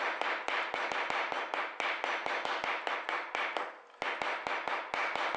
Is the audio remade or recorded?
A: recorded